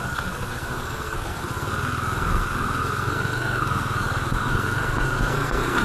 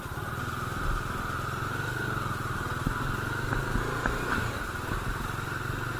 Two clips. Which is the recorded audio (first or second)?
second